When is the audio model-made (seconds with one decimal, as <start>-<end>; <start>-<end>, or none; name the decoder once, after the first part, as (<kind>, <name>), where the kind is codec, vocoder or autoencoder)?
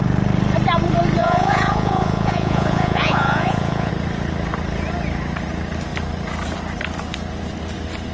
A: 1.2-3.9 (vocoder, Vocos)